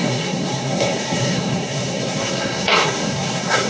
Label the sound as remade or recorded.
remade